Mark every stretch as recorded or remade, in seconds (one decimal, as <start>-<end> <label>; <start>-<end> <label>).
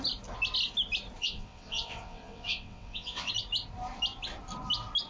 0.0-1.2 recorded; 1.2-3.3 remade; 3.3-5.1 recorded